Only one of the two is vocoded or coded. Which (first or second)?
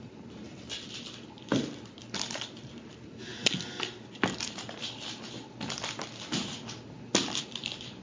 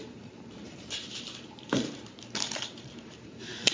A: second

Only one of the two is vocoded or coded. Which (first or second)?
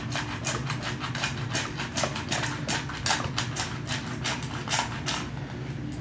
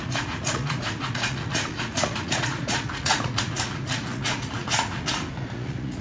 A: second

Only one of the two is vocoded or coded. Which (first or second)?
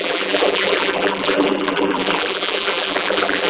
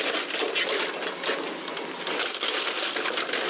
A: first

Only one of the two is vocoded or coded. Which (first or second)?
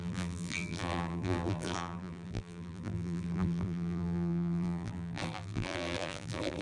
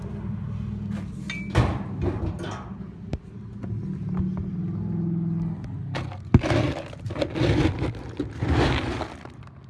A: first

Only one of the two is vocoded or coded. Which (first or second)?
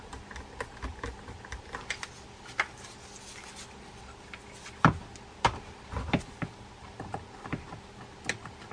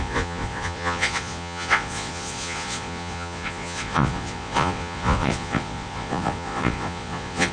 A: second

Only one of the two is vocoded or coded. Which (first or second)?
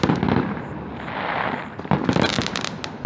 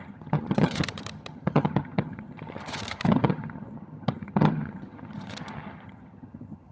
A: second